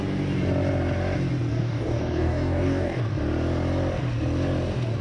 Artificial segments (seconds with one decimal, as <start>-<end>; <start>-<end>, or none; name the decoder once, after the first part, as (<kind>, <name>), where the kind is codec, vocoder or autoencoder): 1.5-3.0 (codec, DAC)